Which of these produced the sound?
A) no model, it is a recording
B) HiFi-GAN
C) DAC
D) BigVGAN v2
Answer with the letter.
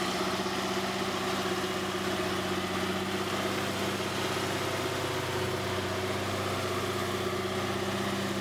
A